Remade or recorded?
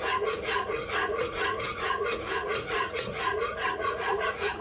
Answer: remade